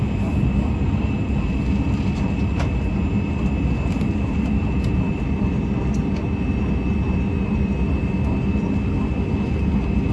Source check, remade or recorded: recorded